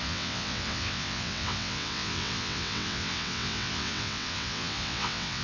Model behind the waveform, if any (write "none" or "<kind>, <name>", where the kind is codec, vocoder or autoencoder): vocoder, WaveNeXt